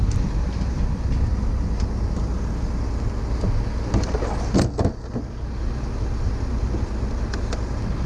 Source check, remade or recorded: recorded